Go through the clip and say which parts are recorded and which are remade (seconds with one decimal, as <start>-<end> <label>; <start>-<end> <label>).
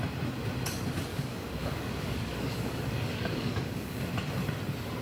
0.0-1.1 recorded; 1.1-4.1 remade; 4.1-5.0 recorded